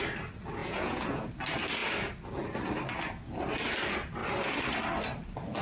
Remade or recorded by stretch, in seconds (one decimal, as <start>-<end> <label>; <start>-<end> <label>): 0.0-0.6 recorded; 0.6-1.3 remade; 1.3-5.6 recorded